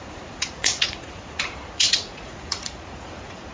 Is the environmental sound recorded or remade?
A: remade